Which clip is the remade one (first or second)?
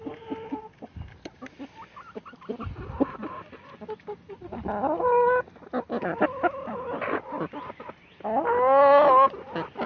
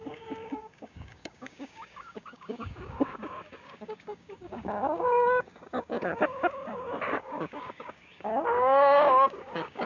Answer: second